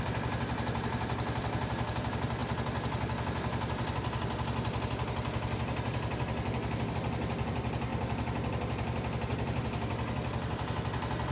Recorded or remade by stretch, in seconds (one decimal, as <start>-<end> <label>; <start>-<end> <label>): 0.0-11.3 recorded